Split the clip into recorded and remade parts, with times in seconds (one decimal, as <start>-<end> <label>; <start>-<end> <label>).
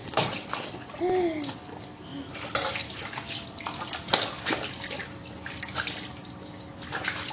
0.0-1.0 remade; 1.0-7.3 recorded